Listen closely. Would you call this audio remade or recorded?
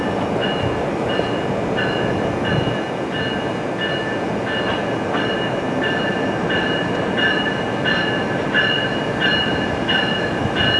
recorded